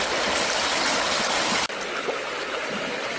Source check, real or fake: real